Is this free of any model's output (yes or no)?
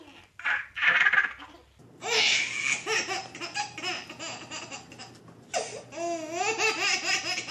yes